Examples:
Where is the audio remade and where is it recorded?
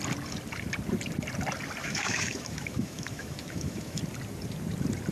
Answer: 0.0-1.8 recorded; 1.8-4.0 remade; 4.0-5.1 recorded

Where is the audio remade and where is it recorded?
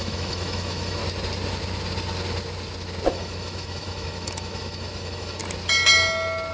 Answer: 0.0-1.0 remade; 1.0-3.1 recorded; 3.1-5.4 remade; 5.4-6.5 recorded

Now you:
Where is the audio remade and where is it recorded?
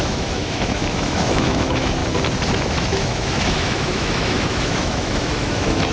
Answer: 0.0-2.0 remade; 2.0-2.5 recorded; 2.5-5.9 remade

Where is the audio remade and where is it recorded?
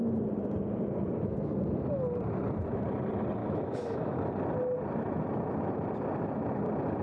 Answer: 0.0-3.4 recorded; 3.4-4.3 remade; 4.3-7.0 recorded